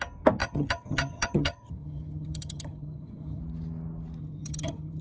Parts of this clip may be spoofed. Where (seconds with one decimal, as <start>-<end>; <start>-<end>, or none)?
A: 0.4-3.4; 4.2-5.0